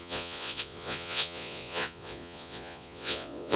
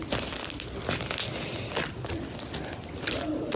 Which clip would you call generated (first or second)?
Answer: first